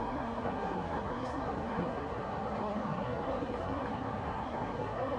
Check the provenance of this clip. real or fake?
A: fake